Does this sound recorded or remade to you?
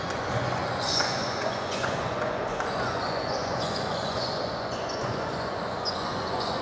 remade